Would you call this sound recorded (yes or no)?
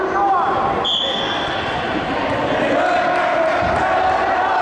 yes